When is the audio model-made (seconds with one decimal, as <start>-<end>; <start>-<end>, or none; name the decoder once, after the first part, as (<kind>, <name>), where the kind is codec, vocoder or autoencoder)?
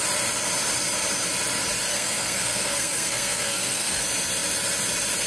1.9-4.0 (codec, SNAC)